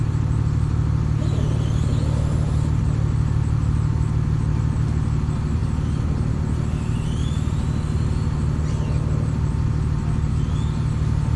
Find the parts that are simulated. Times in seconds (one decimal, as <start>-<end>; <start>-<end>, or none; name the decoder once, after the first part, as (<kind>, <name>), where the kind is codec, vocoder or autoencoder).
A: none